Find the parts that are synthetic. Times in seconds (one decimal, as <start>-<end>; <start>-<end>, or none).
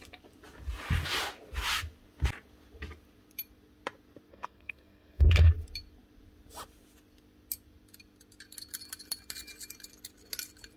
4.3-5.5